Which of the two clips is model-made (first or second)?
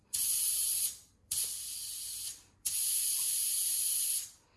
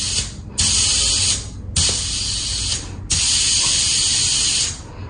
first